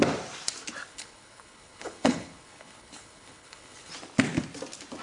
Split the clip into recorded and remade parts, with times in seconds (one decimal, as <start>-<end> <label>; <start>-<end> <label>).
0.0-0.9 recorded; 0.9-3.9 remade; 3.9-5.0 recorded